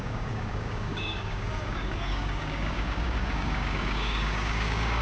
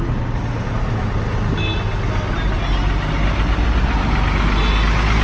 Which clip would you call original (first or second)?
second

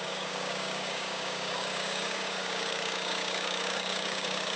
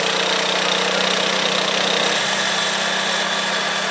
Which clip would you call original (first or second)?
second